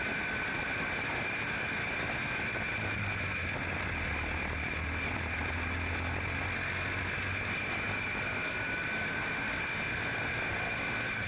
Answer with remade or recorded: recorded